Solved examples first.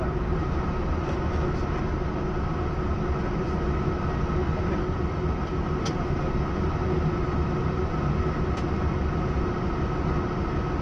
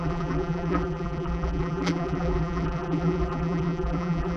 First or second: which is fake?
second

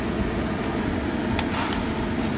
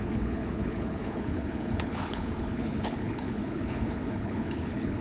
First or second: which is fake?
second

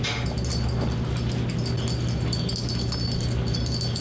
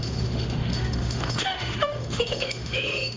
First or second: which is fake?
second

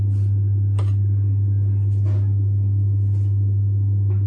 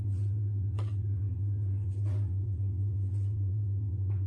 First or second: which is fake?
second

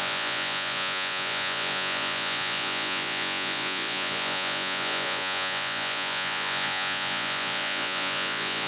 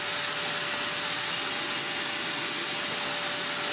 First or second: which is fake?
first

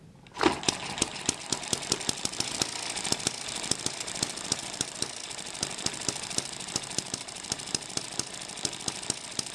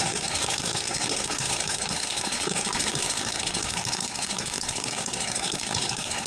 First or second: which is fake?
second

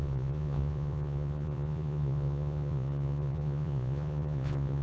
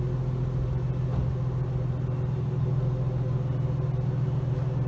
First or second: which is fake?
first